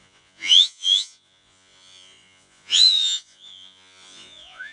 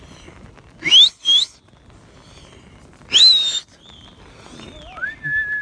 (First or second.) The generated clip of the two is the first